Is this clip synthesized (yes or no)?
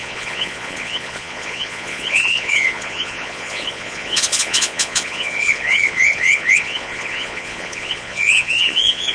yes